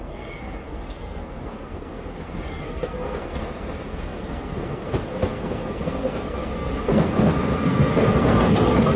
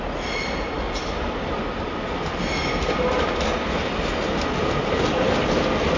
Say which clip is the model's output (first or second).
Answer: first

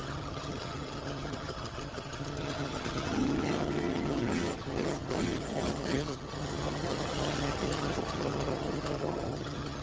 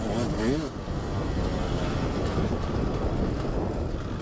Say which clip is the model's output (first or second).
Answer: first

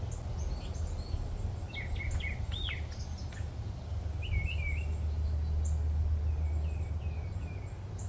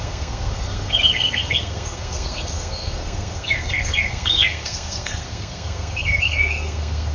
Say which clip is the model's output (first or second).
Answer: second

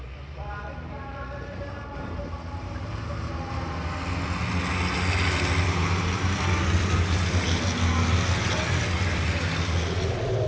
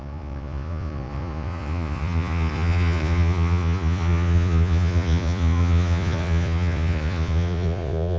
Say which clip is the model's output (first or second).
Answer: second